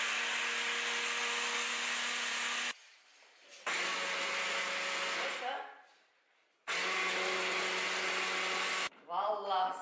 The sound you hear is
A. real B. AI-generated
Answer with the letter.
A